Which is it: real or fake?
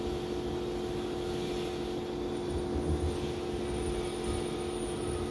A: real